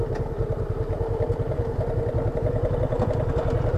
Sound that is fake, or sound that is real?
real